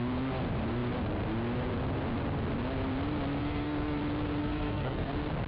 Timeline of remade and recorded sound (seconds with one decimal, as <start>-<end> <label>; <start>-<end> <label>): 0.0-3.4 recorded; 3.4-4.0 remade; 4.0-4.4 recorded; 4.4-5.1 remade; 5.1-5.5 recorded